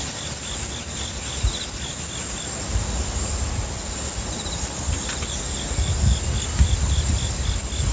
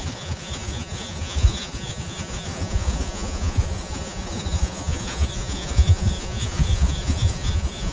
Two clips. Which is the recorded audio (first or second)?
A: first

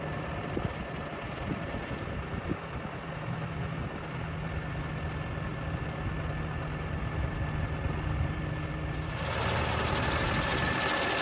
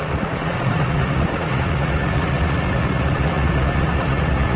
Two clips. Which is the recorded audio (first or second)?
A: first